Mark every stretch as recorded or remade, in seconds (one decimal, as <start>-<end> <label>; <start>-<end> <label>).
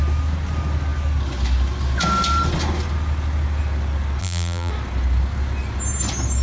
0.0-4.2 recorded; 4.2-4.7 remade; 4.7-6.4 recorded